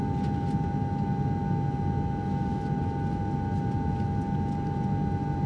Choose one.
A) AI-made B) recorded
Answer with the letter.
B